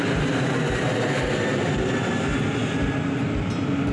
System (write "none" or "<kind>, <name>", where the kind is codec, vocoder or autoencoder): none